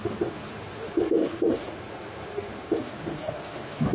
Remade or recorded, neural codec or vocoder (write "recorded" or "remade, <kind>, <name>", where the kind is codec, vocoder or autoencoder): remade, autoencoder, DAC-VAE